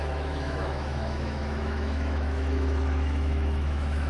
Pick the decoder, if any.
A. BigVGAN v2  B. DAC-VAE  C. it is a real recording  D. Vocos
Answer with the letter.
B